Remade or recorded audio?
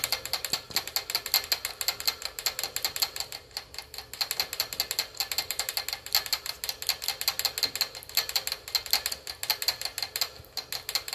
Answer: recorded